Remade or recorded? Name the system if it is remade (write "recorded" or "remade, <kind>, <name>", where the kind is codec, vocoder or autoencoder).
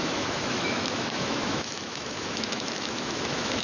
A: remade, autoencoder, DAC-VAE